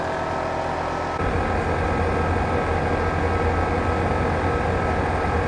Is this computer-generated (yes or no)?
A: no